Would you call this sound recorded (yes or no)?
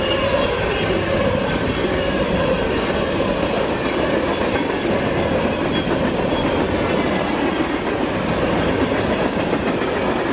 yes